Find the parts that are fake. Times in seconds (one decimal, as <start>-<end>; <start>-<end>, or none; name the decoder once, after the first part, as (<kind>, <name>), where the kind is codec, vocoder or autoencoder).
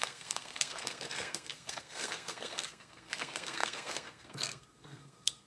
0.0-5.5 (codec, SNAC)